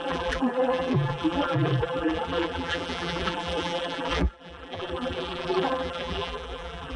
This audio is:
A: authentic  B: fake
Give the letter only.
B